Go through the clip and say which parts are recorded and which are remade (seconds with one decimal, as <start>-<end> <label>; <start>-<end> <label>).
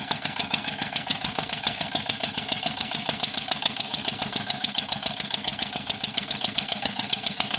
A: 0.0-7.6 remade